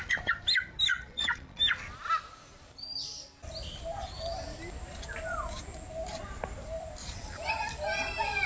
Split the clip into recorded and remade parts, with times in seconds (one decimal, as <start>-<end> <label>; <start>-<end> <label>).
0.0-0.9 recorded; 0.9-1.6 remade; 1.6-7.0 recorded; 7.0-7.5 remade; 7.5-8.5 recorded